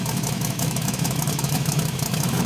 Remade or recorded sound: remade